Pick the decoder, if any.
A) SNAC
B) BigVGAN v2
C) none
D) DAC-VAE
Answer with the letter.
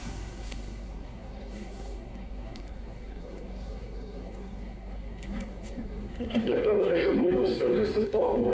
A